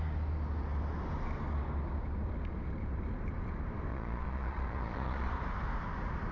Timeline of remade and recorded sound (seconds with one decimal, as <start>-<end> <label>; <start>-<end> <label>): 0.0-3.9 recorded; 3.9-5.3 remade; 5.3-6.3 recorded

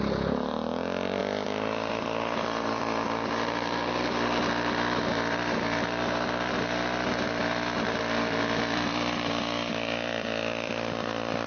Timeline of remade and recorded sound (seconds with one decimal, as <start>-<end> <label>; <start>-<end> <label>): 0.0-1.2 remade; 1.2-1.9 recorded; 1.9-11.5 remade

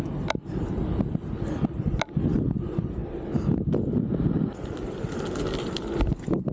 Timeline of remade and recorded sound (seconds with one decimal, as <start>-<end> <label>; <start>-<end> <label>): 0.0-6.5 recorded

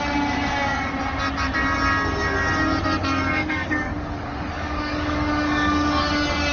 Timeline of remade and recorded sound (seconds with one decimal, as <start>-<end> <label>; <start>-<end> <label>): 0.0-3.4 recorded; 3.4-6.1 remade; 6.1-6.5 recorded

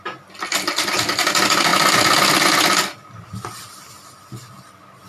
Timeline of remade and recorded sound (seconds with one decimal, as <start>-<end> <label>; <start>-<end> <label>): 0.0-5.1 recorded

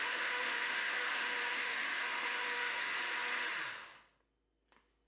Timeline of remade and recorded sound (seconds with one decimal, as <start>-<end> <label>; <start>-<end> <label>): 0.0-3.0 remade; 3.0-5.1 recorded

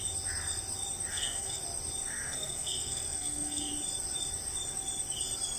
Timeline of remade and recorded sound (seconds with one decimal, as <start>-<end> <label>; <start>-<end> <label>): 0.0-1.1 recorded; 1.1-1.6 remade; 1.6-2.1 recorded; 2.1-3.7 remade; 3.7-5.6 recorded

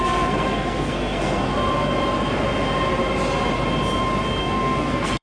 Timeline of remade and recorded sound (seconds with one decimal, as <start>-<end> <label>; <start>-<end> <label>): 0.0-1.5 remade; 1.5-4.4 recorded; 4.4-5.2 remade